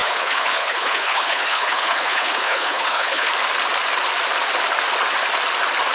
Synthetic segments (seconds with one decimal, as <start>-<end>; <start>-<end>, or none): 0.0-3.3